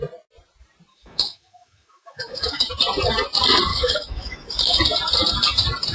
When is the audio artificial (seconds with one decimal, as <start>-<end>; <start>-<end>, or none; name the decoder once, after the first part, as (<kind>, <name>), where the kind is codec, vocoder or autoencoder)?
0.9-2.7 (autoencoder, DAC-VAE); 3.7-4.8